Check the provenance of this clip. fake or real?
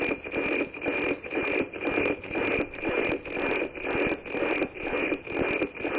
real